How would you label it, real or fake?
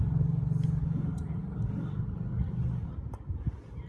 real